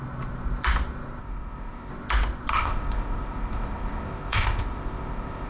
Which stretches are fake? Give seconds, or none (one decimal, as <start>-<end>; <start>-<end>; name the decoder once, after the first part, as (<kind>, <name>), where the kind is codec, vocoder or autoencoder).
1.2-1.9 (codec, ZipCodec); 2.5-5.5